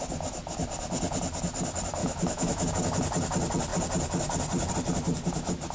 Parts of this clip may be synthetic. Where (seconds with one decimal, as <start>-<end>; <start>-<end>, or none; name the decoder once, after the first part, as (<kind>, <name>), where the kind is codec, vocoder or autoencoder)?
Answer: 2.0-2.7 (autoencoder, DAC-VAE)